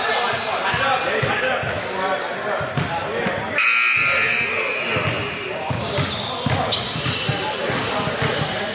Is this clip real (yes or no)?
yes